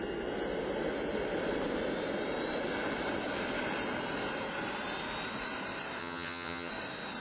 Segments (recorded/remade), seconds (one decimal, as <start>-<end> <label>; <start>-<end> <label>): 0.0-6.0 recorded; 6.0-6.7 remade; 6.7-7.2 recorded